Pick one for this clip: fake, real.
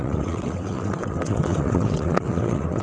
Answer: fake